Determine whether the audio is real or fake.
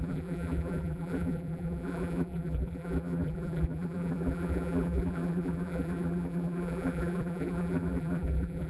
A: fake